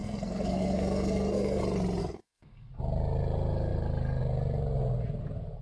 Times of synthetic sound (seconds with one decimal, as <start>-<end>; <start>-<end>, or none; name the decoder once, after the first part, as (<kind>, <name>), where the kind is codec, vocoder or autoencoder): 0.0-1.6 (codec, SNAC); 2.0-2.7